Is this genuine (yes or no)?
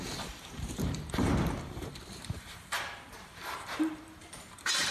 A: no